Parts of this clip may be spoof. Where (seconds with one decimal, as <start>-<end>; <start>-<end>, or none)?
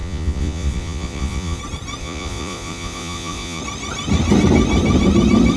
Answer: 0.0-1.6; 2.0-3.6